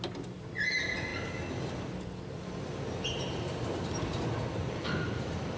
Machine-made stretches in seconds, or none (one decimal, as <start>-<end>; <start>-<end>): 4.6-5.6